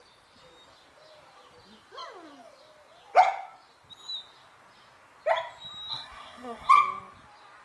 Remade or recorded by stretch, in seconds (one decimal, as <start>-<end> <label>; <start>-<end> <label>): 0.0-5.9 recorded; 5.9-6.7 remade; 6.7-7.6 recorded